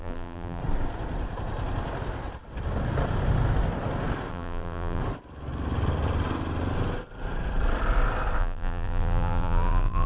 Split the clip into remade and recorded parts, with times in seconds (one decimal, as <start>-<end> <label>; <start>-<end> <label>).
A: 0.0-0.6 remade; 0.6-4.3 recorded; 4.3-5.0 remade; 5.0-8.4 recorded; 8.4-10.1 remade